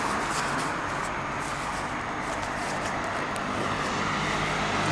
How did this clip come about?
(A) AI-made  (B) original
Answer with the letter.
B